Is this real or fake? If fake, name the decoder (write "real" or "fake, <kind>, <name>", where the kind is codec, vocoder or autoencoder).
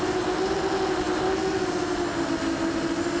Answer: real